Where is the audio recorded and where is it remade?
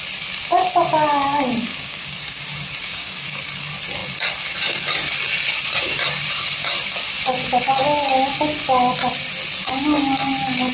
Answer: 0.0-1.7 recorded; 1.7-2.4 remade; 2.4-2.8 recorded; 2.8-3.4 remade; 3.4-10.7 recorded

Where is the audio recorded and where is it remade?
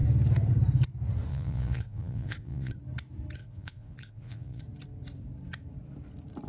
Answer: 0.0-1.3 recorded; 1.3-2.7 remade; 2.7-3.4 recorded; 3.4-4.6 remade; 4.6-6.5 recorded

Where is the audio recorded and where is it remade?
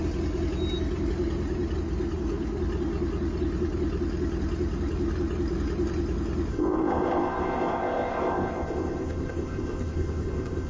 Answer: 0.0-6.5 recorded; 6.5-10.7 remade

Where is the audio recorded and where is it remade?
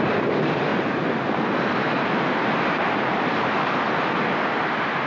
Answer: 0.0-0.7 recorded; 0.7-3.8 remade; 3.8-5.1 recorded